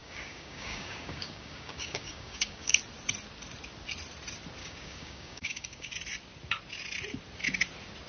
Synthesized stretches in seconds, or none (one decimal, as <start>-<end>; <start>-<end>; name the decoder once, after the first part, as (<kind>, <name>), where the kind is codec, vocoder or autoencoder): 0.0-2.8 (codec, DAC); 4.6-5.9